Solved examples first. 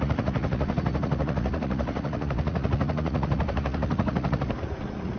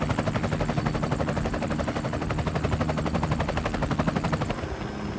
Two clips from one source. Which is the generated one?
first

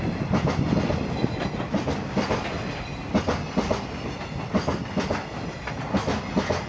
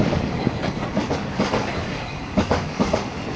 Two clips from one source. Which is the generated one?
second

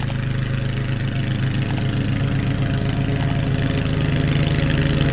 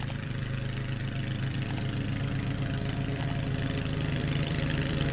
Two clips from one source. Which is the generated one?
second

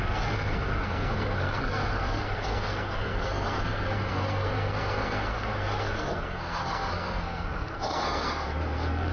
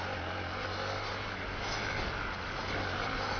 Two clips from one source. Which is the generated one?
first